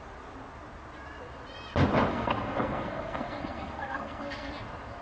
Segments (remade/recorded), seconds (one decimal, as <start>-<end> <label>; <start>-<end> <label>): 0.0-2.1 recorded; 2.1-4.5 remade; 4.5-5.0 recorded